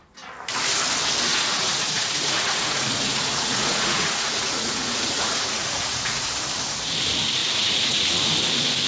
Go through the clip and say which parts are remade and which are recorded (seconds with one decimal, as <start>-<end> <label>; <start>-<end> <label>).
0.0-1.3 recorded; 1.3-6.3 remade; 6.3-7.4 recorded; 7.4-8.3 remade; 8.3-8.9 recorded